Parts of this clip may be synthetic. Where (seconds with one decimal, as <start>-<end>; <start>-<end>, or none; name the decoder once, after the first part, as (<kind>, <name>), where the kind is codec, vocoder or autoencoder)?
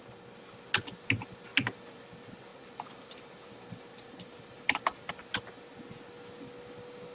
1.5-2.0 (vocoder, BigVGAN v2); 2.5-5.1